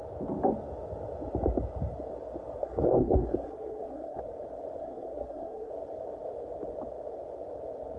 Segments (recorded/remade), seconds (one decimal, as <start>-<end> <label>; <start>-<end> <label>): 0.0-2.6 recorded; 2.6-4.2 remade; 4.2-4.8 recorded; 4.8-5.7 remade; 5.7-8.0 recorded